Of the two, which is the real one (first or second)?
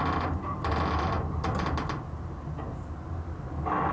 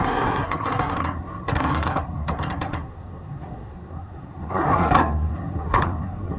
first